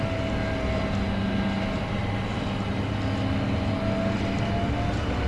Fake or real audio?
real